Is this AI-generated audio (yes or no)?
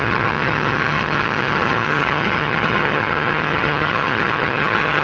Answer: yes